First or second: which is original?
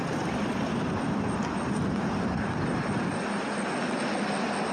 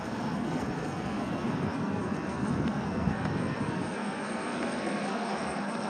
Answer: first